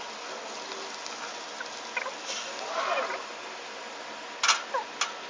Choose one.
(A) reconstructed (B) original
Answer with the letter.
B